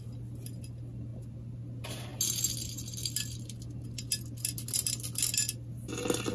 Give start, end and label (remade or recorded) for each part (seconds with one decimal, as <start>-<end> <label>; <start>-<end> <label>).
0.0-6.3 recorded